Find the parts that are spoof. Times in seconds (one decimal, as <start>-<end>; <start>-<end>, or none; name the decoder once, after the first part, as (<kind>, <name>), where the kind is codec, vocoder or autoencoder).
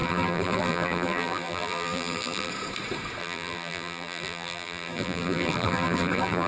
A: 0.0-2.5 (vocoder, BigVGAN v2); 3.2-6.5